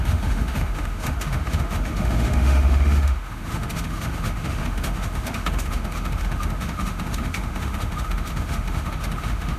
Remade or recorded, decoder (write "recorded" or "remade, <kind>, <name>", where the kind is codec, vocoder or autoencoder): remade, autoencoder, DAC-VAE